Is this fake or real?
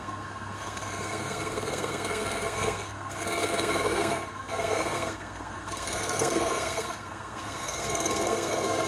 fake